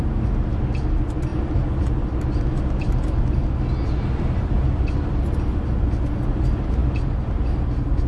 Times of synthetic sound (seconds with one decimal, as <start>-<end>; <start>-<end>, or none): none